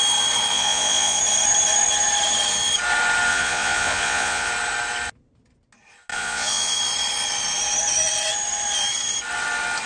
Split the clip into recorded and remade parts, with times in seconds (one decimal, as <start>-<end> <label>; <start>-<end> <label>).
0.0-0.5 recorded; 0.5-1.2 remade; 1.2-3.3 recorded; 3.3-4.5 remade; 4.5-6.1 recorded; 6.1-6.8 remade; 6.8-9.9 recorded